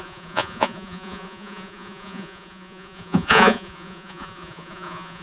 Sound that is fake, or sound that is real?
fake